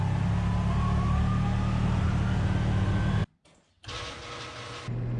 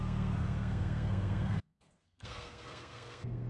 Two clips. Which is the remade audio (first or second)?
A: second